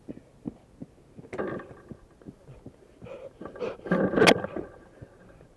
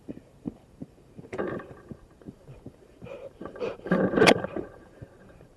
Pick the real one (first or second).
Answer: first